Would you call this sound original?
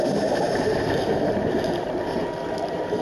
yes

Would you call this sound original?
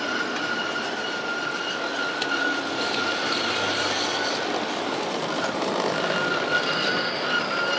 yes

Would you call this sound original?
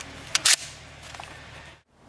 yes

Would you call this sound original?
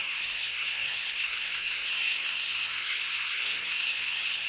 no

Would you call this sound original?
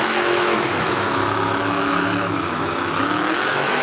no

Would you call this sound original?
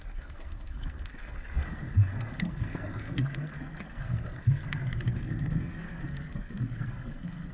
no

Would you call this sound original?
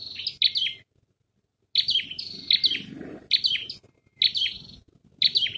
yes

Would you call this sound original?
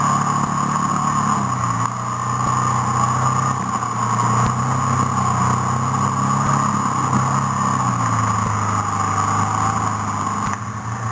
yes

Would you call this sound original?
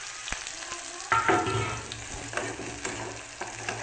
yes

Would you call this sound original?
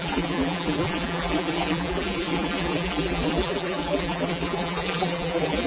no